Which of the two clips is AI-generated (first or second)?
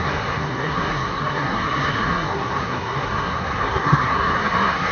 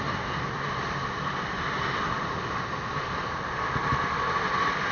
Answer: first